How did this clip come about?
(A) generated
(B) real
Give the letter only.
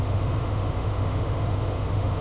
A